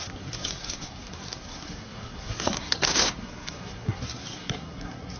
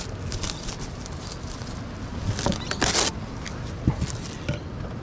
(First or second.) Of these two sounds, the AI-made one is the first